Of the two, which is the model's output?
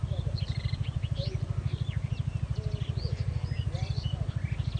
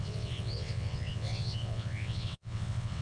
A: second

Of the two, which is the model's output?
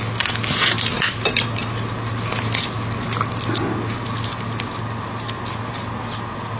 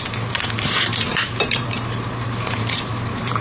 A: second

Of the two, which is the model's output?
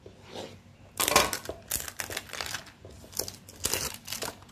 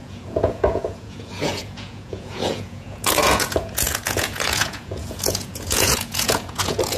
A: second